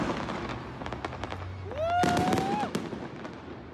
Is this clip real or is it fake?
real